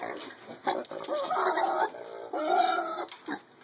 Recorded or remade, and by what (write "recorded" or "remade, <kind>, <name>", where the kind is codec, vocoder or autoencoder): recorded